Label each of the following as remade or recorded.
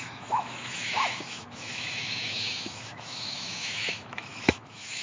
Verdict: remade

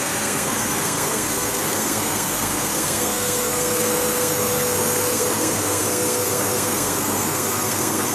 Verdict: remade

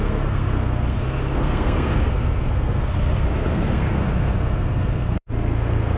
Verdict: remade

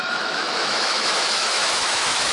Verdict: remade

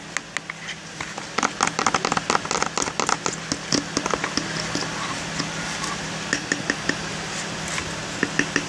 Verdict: recorded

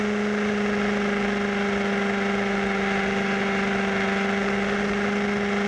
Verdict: recorded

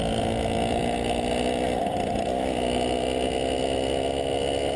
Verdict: recorded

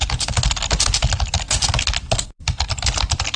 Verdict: recorded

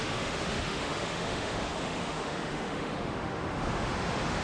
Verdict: remade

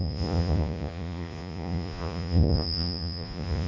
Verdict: remade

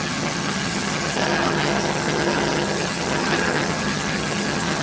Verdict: remade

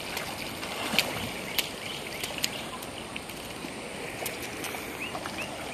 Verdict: recorded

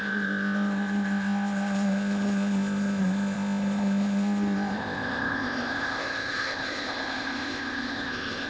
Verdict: remade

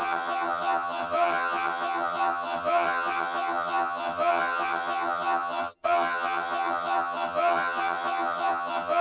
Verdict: remade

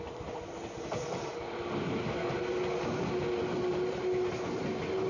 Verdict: recorded